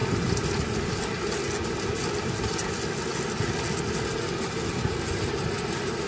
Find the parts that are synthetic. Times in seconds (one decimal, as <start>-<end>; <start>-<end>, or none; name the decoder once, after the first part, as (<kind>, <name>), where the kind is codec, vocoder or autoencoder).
none